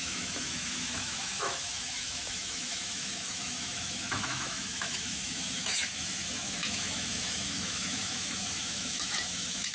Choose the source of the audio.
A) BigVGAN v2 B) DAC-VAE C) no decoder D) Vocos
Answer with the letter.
B